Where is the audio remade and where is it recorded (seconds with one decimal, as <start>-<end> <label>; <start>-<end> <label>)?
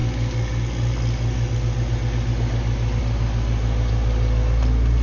0.0-5.0 recorded